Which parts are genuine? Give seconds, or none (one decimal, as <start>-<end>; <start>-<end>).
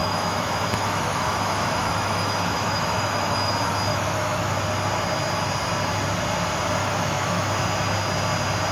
3.5-3.9; 4.5-6.8; 7.5-8.7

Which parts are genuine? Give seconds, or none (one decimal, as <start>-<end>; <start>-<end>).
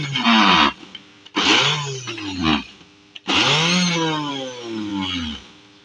0.0-5.8